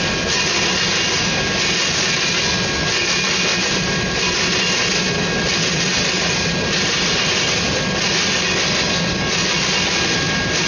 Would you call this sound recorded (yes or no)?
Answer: yes